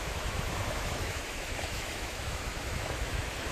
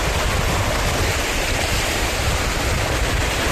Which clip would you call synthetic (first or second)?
first